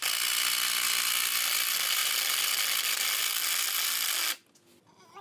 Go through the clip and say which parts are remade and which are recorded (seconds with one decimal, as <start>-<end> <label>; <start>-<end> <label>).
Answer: 0.0-2.0 recorded; 2.0-2.5 remade; 2.5-5.2 recorded